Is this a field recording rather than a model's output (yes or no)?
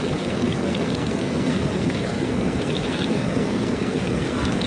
no